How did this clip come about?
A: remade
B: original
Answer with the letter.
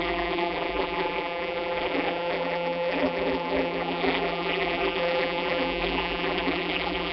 A